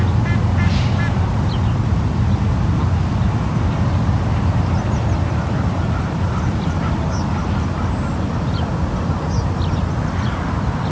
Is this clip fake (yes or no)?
no